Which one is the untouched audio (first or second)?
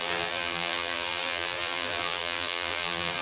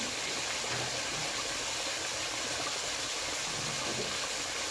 second